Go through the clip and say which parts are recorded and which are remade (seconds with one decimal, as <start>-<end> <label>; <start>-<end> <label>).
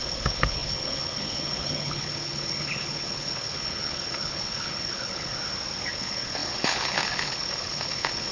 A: 0.0-5.3 remade; 5.3-5.9 recorded; 5.9-8.3 remade